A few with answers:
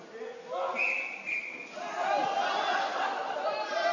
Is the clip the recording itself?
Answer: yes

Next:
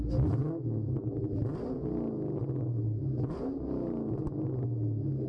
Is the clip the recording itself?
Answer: yes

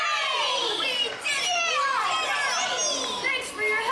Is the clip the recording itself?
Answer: yes